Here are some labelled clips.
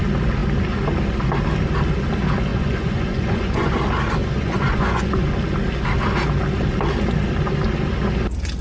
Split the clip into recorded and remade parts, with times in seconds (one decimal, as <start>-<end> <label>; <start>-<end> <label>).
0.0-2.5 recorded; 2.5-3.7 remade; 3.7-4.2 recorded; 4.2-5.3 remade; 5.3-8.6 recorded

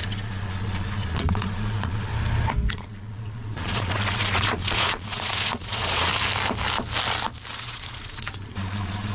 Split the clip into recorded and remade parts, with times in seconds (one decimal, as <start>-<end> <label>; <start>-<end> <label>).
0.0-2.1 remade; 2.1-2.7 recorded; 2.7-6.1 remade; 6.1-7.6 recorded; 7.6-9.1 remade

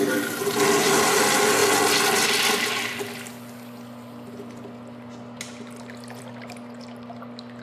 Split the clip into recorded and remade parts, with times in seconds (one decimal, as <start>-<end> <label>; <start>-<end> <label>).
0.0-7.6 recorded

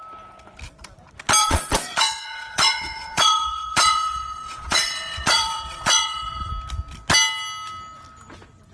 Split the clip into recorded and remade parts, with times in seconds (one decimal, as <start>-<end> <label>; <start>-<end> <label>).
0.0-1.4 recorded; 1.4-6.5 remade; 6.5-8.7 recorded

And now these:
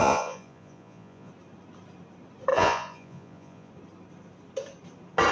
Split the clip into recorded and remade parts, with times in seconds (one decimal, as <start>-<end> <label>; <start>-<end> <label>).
0.0-1.3 remade; 1.3-2.5 recorded; 2.5-3.7 remade; 3.7-5.3 recorded